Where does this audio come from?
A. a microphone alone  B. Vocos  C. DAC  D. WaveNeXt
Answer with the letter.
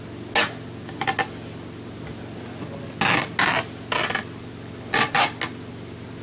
A